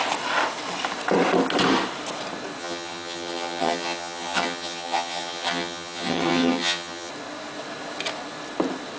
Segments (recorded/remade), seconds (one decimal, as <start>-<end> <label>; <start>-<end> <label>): 0.0-2.6 recorded; 2.6-7.1 remade; 7.1-9.0 recorded